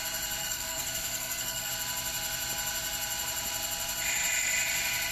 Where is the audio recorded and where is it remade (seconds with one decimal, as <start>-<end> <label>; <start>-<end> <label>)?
0.0-0.4 recorded; 0.4-1.7 remade; 1.7-5.1 recorded